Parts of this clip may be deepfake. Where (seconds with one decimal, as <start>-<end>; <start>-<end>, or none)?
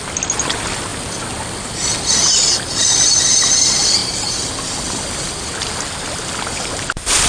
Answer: none